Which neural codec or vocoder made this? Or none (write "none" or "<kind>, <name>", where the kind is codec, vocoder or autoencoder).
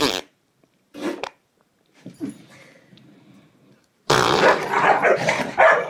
vocoder, BigVGAN v2